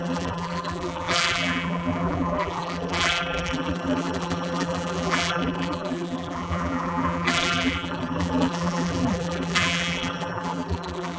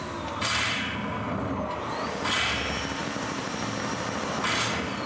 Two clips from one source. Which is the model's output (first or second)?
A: first